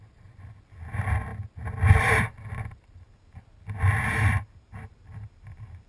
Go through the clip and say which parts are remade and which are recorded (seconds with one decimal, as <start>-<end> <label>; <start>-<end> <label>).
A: 0.0-5.9 recorded